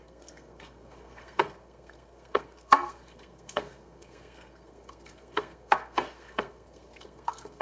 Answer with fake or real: fake